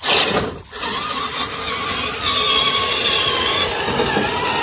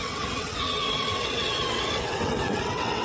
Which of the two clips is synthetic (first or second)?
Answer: second